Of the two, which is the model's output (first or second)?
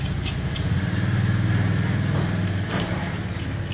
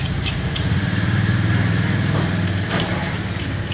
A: second